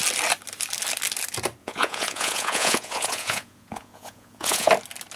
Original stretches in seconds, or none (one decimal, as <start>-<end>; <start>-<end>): 0.0-1.6; 4.7-5.2